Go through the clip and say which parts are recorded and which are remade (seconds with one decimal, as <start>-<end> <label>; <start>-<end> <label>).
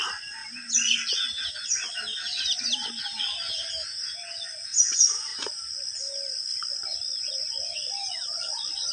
0.0-8.9 recorded